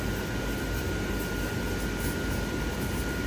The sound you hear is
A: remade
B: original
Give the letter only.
B